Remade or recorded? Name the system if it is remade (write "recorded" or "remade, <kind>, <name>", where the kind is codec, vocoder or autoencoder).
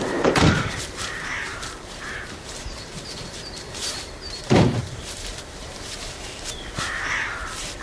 remade, vocoder, BigVGAN v2